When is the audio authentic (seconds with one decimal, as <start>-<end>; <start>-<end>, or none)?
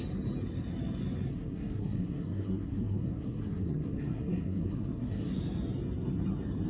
0.0-1.3; 5.3-6.7